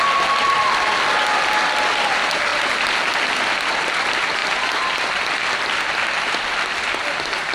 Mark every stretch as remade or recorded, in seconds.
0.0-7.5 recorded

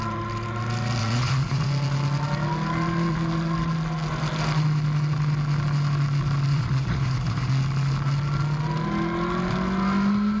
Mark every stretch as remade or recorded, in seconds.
0.0-1.0 recorded; 1.0-1.7 remade; 1.7-6.5 recorded; 6.5-7.5 remade; 7.5-10.4 recorded

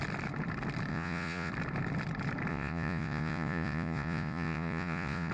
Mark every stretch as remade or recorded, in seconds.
0.0-0.9 recorded; 0.9-1.5 remade; 1.5-2.5 recorded; 2.5-5.3 remade